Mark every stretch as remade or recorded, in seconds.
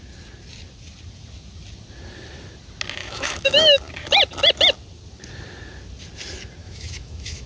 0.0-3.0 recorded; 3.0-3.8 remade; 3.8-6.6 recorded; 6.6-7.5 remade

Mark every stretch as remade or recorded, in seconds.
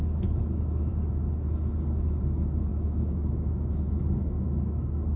0.0-2.7 recorded; 2.7-4.0 remade; 4.0-5.2 recorded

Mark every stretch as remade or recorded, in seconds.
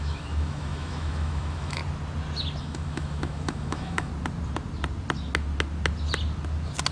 0.0-1.8 remade; 1.8-2.6 recorded; 2.6-4.1 remade; 4.1-6.9 recorded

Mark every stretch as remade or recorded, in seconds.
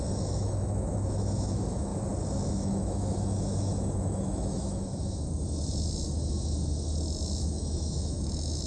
0.0-1.9 remade; 1.9-2.5 recorded; 2.5-4.9 remade; 4.9-7.4 recorded; 7.4-8.7 remade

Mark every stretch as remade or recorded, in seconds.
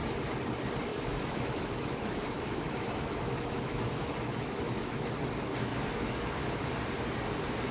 0.0-0.9 recorded; 0.9-5.1 remade; 5.1-5.7 recorded; 5.7-6.6 remade; 6.6-7.7 recorded